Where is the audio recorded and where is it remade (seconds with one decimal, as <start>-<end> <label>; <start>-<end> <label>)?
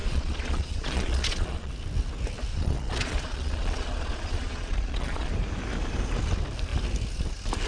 0.0-1.7 remade; 1.7-2.5 recorded; 2.5-5.3 remade; 5.3-7.7 recorded